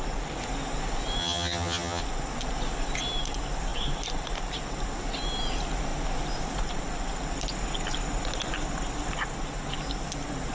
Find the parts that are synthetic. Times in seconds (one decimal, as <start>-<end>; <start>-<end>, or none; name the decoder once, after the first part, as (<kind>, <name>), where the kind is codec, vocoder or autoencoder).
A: 1.2-2.0 (vocoder, HiFi-GAN)